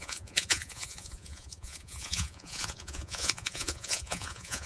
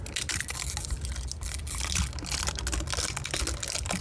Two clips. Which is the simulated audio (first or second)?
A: first